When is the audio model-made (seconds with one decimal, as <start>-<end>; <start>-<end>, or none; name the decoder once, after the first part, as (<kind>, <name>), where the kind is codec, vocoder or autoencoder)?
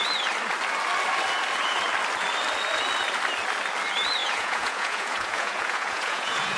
4.2-6.6 (vocoder, Vocos)